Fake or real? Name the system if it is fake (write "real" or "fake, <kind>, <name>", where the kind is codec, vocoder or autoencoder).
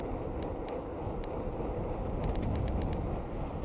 real